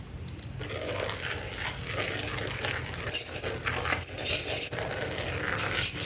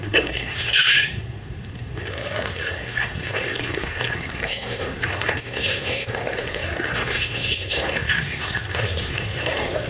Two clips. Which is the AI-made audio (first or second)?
second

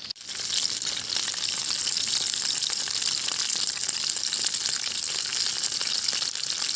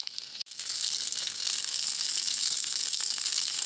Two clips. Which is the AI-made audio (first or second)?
second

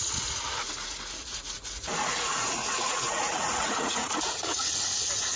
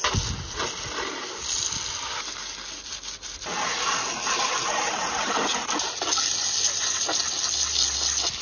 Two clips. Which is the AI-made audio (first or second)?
first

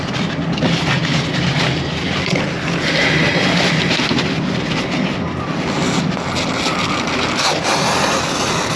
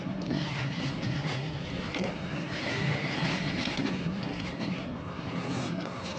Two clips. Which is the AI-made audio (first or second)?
second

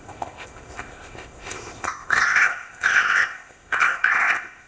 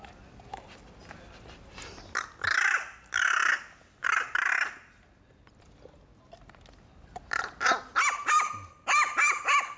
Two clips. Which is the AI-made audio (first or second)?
first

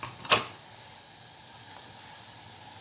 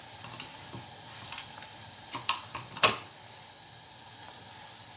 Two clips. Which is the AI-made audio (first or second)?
second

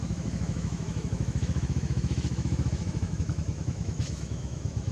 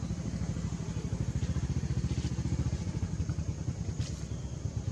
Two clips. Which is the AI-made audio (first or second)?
first